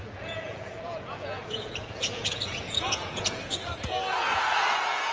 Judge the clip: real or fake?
fake